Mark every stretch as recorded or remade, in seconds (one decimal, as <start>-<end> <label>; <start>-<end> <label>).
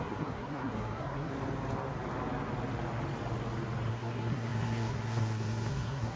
0.0-1.3 remade; 1.3-3.9 recorded; 3.9-6.2 remade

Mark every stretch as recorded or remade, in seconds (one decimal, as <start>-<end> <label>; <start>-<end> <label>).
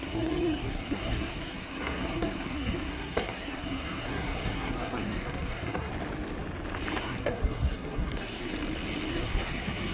0.0-5.9 remade; 5.9-7.0 recorded; 7.0-8.5 remade; 8.5-9.1 recorded; 9.1-9.9 remade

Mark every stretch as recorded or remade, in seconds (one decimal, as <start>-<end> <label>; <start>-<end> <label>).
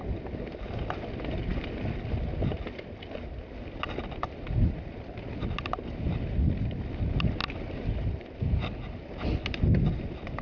0.0-10.4 recorded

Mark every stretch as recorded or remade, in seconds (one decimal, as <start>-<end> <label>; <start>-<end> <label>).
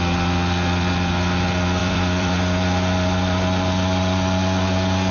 0.0-1.8 recorded; 1.8-5.1 remade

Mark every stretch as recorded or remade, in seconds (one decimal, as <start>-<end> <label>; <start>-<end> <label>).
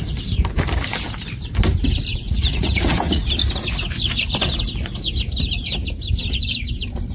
0.0-2.1 recorded; 2.1-3.3 remade; 3.3-7.1 recorded